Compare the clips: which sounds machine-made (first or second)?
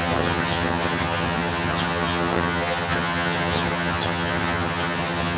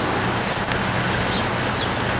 first